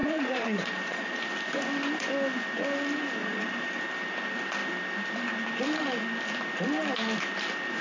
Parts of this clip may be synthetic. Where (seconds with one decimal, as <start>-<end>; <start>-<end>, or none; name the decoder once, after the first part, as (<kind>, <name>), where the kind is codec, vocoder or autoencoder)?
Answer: 0.0-1.2 (vocoder, Vocos); 3.2-3.8